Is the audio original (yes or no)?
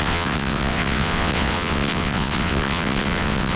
no